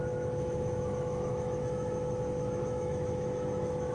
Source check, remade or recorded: remade